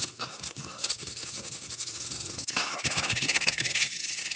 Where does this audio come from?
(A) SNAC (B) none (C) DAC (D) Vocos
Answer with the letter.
A